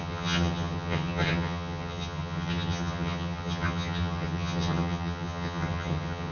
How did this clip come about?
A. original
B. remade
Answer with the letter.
B